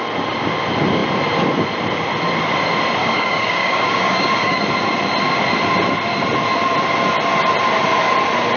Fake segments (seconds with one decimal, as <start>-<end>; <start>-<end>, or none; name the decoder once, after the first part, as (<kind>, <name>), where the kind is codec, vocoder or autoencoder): 3.0-4.6 (codec, DAC)